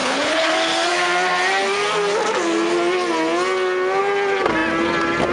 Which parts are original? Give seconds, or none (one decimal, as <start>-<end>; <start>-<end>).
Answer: 0.5-5.3